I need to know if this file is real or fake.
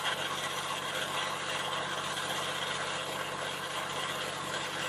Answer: real